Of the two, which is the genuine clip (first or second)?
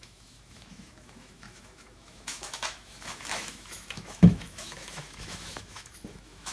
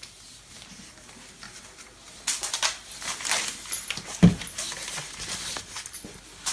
second